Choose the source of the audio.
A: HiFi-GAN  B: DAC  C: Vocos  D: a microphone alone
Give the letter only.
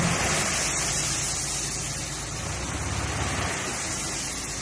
D